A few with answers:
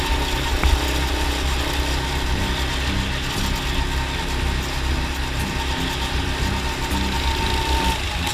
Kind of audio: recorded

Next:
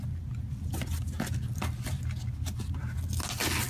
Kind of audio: recorded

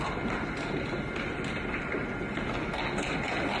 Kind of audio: recorded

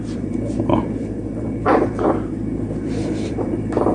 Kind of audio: remade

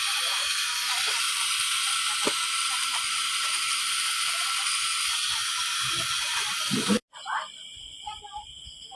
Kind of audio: recorded